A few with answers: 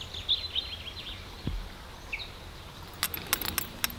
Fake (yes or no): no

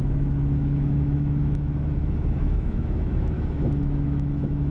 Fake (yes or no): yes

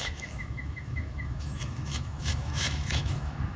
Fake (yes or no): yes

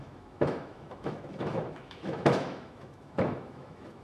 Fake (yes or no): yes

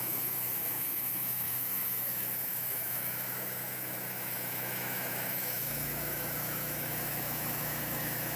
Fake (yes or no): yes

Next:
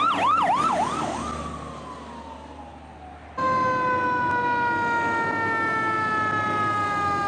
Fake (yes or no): no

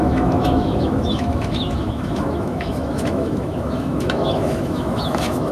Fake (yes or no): yes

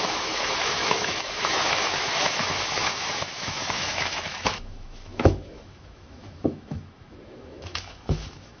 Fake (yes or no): yes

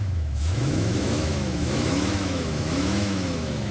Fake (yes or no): yes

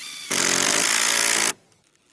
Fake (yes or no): no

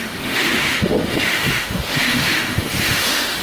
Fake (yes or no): yes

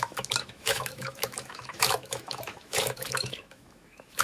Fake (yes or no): yes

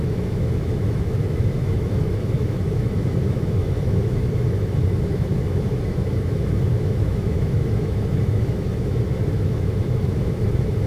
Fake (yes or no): yes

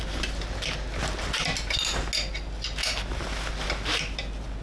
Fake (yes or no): no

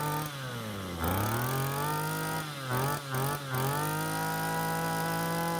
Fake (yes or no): no